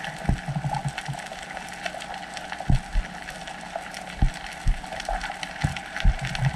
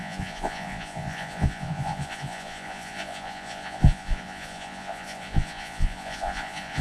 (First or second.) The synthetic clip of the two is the second